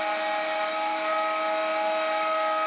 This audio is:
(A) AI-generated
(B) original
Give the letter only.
B